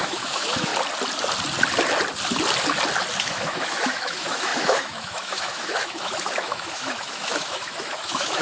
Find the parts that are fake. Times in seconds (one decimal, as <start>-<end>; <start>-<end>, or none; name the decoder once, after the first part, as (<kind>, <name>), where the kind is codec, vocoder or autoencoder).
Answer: 0.0-0.7 (autoencoder, DAC-VAE); 3.2-8.4